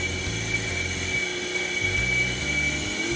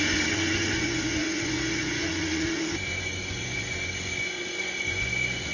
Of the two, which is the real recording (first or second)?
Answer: first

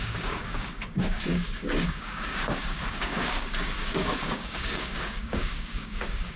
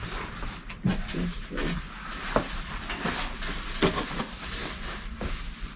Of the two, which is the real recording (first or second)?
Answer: second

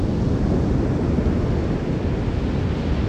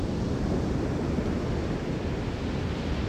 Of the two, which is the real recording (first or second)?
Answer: first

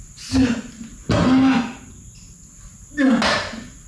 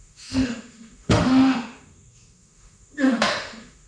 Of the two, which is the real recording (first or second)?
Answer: first